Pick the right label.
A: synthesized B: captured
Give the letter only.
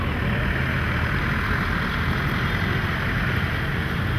B